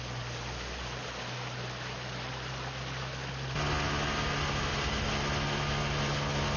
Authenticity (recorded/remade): recorded